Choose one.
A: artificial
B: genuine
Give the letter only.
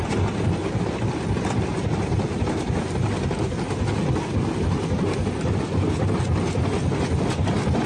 B